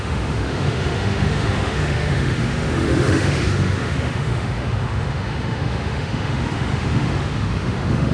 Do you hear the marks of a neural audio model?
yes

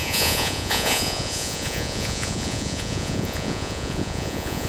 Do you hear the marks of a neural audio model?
yes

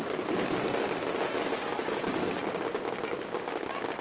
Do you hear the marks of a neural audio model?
no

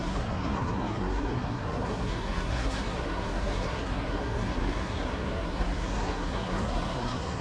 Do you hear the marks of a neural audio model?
yes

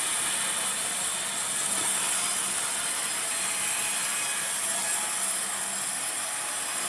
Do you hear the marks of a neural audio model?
no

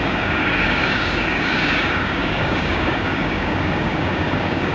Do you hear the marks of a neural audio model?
yes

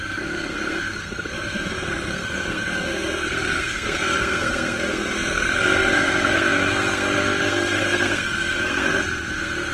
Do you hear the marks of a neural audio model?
yes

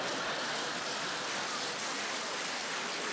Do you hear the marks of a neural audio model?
no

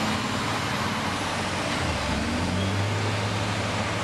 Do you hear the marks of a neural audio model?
no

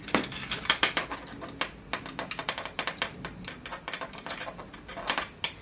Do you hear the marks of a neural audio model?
no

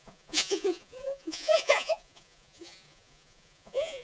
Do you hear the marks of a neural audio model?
yes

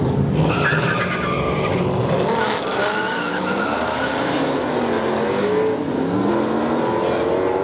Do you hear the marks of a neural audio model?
no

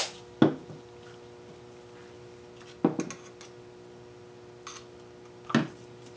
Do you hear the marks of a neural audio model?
no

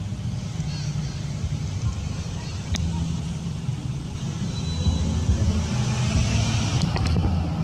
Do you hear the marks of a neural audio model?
no